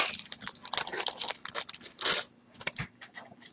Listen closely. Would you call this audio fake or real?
real